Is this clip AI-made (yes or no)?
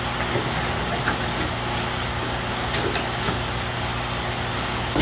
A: no